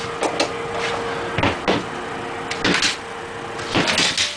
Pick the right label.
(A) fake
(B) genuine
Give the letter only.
B